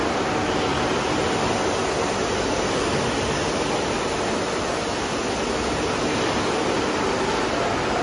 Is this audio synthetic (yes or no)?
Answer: no